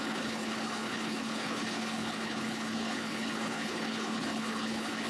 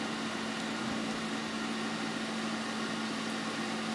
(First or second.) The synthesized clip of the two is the first